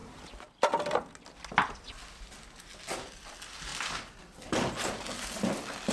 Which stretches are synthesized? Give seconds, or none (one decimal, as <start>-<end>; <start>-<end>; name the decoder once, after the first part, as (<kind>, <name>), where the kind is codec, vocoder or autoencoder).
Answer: none